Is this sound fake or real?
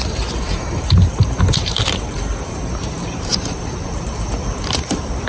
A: fake